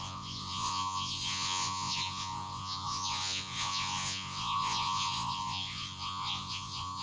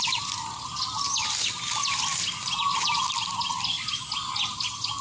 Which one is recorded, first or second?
second